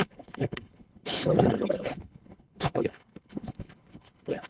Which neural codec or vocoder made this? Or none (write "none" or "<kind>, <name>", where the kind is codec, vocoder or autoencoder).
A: codec, HILCodec